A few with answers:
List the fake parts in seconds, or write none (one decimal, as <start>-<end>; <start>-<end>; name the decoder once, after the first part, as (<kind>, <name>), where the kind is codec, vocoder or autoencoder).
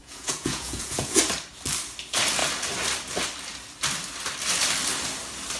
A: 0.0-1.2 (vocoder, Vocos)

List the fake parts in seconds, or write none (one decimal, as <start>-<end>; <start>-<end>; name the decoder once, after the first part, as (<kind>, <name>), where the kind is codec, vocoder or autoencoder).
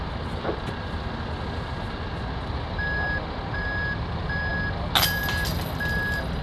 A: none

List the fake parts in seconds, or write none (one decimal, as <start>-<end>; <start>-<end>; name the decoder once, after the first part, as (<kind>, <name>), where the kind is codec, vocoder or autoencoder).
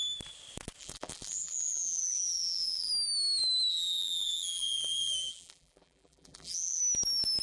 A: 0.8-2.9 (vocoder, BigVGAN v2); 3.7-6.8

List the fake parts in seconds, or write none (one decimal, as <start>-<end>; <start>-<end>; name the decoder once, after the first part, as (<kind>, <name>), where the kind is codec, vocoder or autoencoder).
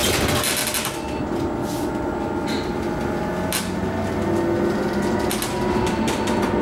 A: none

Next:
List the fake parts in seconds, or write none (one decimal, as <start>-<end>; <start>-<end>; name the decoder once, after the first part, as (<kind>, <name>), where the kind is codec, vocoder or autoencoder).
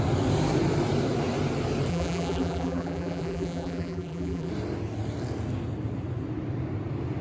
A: 1.9-4.5 (vocoder, BigVGAN v2)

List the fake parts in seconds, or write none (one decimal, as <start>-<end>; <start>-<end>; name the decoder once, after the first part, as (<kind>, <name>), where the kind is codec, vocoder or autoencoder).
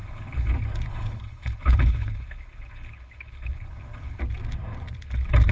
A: 0.0-0.5 (codec, HILCodec); 0.9-4.2